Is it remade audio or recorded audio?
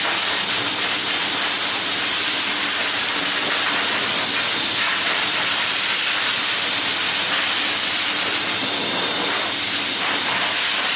recorded